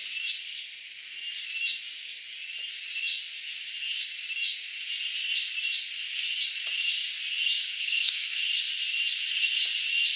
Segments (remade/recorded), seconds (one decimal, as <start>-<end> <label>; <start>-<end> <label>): 0.0-7.6 recorded; 7.6-8.4 remade; 8.4-10.2 recorded